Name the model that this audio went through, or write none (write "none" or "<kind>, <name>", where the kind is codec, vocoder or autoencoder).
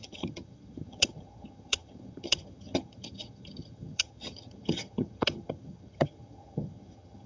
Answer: vocoder, HiFi-GAN